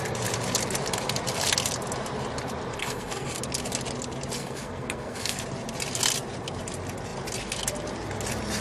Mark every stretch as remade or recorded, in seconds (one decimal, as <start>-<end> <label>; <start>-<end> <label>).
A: 0.0-2.8 recorded; 2.8-3.4 remade; 3.4-4.4 recorded; 4.4-5.4 remade; 5.4-8.6 recorded